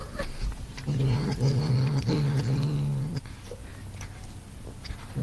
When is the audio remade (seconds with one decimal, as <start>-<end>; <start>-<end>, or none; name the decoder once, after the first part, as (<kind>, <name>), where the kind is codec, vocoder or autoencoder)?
0.0-1.7 (vocoder, BigVGAN v2)